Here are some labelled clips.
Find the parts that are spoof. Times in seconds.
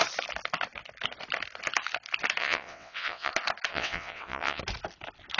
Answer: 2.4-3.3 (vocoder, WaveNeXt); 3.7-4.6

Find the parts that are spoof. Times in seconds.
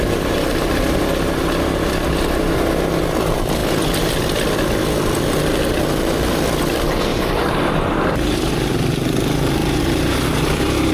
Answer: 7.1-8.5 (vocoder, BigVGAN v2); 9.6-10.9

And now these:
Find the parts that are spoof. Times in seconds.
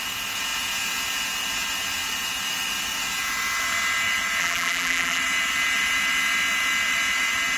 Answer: 4.4-5.2 (vocoder, BigVGAN v2)